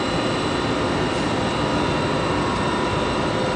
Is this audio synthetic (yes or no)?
no